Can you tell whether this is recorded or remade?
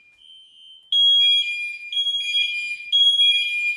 recorded